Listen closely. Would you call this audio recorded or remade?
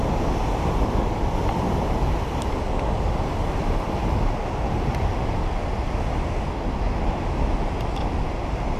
recorded